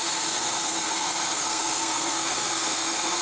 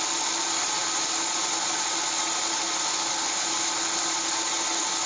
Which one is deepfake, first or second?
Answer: first